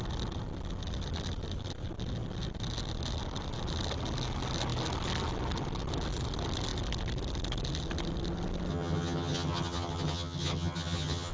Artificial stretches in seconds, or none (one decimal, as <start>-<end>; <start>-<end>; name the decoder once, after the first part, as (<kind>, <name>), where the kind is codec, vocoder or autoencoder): 8.7-11.3 (vocoder, HiFi-GAN)